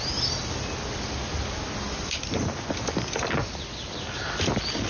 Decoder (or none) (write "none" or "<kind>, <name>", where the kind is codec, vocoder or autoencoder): none